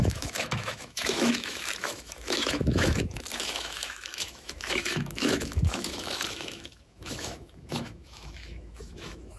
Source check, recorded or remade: remade